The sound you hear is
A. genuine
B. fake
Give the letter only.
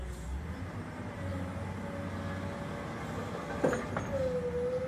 A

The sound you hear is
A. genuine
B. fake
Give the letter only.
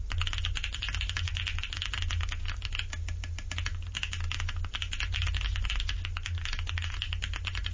A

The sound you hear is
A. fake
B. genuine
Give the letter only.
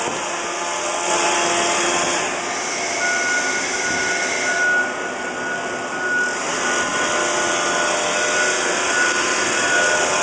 B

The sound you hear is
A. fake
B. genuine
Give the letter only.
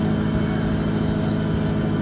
B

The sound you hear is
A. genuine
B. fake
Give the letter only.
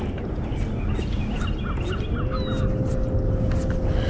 A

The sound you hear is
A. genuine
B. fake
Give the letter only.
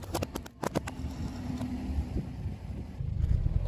A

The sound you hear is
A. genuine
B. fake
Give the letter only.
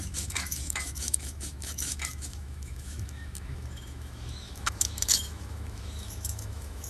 B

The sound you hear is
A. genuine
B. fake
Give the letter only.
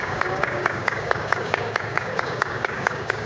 B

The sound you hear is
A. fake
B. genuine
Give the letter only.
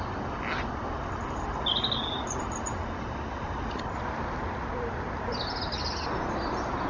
B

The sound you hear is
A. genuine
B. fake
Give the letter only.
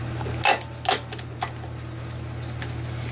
A